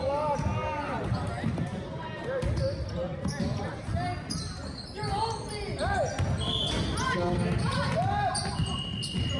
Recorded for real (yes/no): yes